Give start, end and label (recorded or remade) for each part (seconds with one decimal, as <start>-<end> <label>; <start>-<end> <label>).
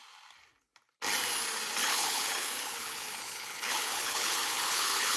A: 0.0-1.8 recorded; 1.8-5.2 remade